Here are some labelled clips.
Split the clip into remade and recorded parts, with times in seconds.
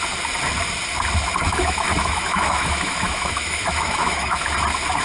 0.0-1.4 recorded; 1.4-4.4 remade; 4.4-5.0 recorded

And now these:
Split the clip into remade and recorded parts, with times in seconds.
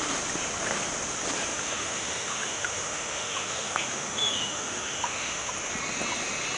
0.0-1.5 recorded; 1.5-5.5 remade; 5.5-6.6 recorded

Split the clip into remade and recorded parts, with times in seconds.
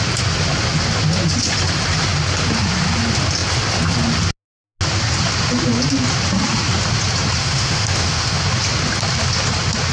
0.0-7.4 recorded; 7.4-8.4 remade; 8.4-9.9 recorded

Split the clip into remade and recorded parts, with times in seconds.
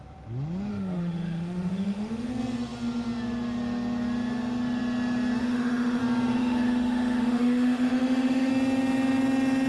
0.0-0.7 recorded; 0.7-2.3 remade; 2.3-5.4 recorded; 5.4-6.0 remade; 6.0-6.4 recorded; 6.4-8.5 remade; 8.5-9.7 recorded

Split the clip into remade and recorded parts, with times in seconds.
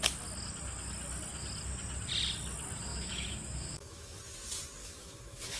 0.0-2.9 recorded; 2.9-4.2 remade; 4.2-4.8 recorded; 4.8-5.6 remade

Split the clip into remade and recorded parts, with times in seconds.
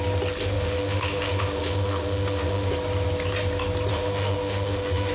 0.0-0.4 recorded; 0.4-2.7 remade; 2.7-3.9 recorded; 3.9-5.1 remade